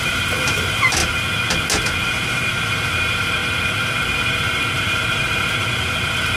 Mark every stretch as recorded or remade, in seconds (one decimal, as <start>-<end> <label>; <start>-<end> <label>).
0.0-1.0 remade; 1.0-2.0 recorded; 2.0-3.4 remade; 3.4-4.8 recorded; 4.8-6.4 remade